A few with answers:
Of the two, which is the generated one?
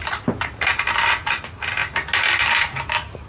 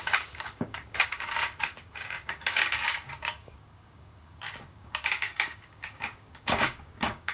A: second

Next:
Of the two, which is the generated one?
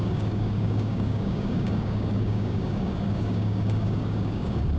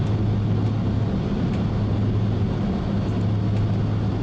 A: first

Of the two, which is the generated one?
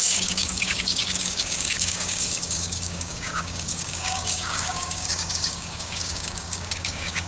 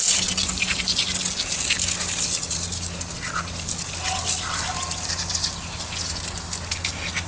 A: first